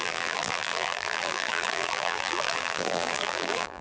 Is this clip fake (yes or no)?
yes